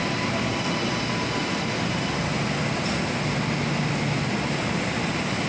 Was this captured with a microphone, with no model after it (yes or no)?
yes